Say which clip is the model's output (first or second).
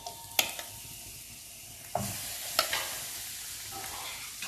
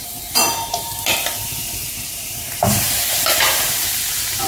second